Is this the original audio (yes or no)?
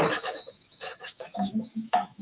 no